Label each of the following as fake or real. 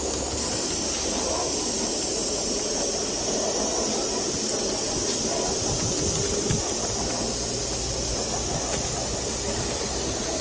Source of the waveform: real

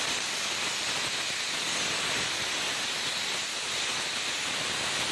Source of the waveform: real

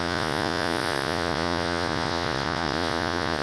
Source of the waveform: fake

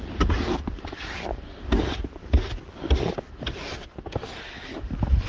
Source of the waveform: real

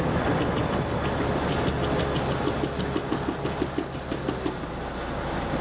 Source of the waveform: real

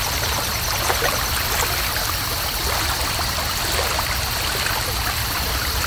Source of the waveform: real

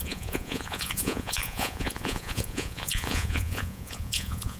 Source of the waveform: fake